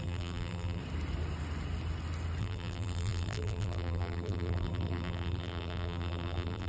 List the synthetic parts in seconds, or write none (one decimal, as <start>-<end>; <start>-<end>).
0.0-0.8; 2.4-6.7